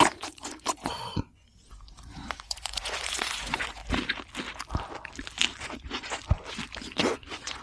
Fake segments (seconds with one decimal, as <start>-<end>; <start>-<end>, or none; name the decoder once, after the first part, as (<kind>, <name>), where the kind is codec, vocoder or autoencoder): 0.0-3.8 (vocoder, Vocos); 5.6-6.2; 7.0-7.6